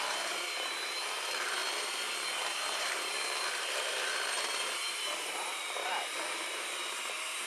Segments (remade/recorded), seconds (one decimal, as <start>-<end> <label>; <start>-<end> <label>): 0.0-7.5 remade